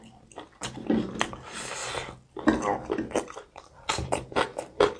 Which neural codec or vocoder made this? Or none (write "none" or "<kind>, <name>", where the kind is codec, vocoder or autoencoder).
none